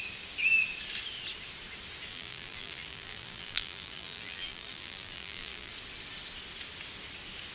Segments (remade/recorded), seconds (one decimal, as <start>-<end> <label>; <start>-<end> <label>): 0.0-2.1 recorded; 2.1-5.7 remade; 5.7-7.5 recorded